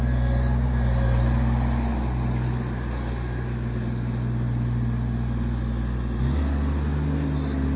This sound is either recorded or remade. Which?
recorded